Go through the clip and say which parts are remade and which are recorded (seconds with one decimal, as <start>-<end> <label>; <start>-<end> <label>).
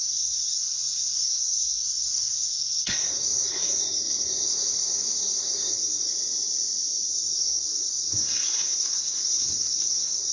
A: 0.0-6.1 remade; 6.1-7.1 recorded; 7.1-10.3 remade